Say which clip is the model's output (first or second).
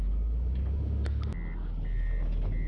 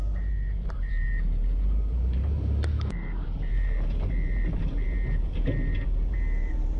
second